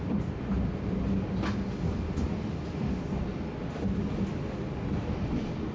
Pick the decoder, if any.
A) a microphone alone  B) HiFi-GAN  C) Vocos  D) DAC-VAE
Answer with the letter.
A